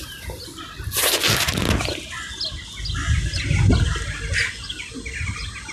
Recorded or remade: recorded